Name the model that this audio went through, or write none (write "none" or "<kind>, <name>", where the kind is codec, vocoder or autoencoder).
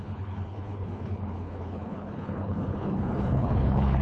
codec, HILCodec